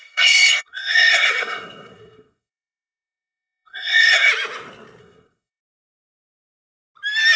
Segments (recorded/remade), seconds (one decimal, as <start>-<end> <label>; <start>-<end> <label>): 0.0-4.3 remade; 4.3-5.0 recorded; 5.0-5.6 remade; 5.6-7.4 recorded